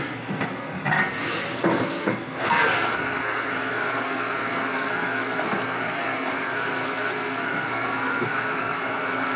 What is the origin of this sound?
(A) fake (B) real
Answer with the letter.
A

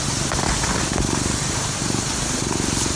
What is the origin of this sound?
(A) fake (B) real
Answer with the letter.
B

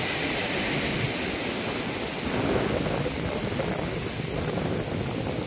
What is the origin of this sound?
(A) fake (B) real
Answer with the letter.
B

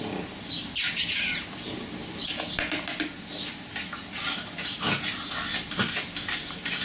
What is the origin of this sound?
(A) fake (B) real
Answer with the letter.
B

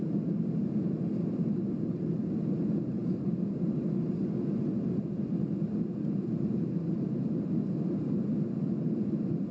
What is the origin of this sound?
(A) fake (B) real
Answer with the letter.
B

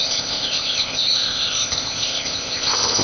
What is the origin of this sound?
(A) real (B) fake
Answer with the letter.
B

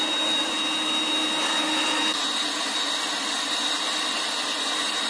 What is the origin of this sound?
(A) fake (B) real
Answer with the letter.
B